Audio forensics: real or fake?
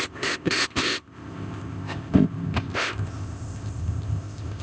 fake